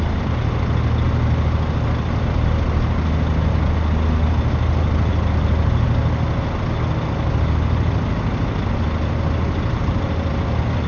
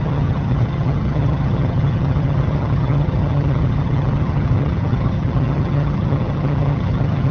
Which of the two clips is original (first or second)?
first